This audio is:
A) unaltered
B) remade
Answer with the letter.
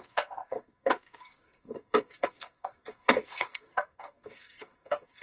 B